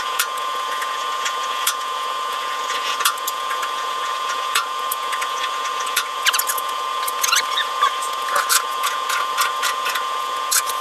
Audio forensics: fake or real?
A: fake